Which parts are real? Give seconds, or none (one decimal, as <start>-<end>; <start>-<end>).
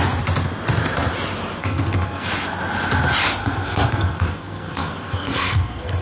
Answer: 0.0-1.6; 2.3-3.4